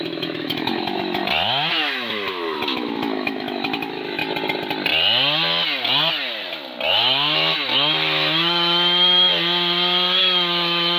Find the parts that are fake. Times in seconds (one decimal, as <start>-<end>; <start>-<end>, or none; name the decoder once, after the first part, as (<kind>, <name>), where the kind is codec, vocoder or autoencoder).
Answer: 0.0-1.2 (autoencoder, DAC-VAE); 1.7-4.2; 6.9-9.3; 10.2-11.0